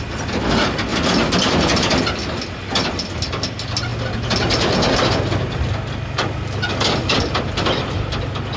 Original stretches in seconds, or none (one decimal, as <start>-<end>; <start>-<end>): 0.0-8.6